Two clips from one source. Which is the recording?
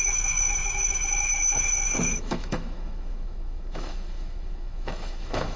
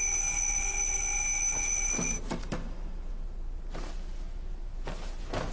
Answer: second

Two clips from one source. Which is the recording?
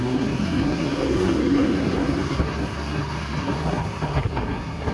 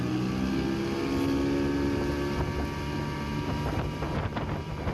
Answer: second